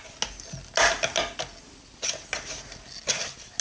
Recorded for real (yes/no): yes